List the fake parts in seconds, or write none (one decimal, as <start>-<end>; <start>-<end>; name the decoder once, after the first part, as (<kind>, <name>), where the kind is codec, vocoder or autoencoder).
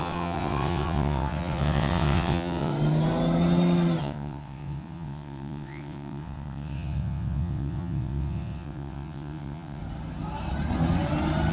0.0-2.7 (vocoder, WaveNeXt); 4.0-9.8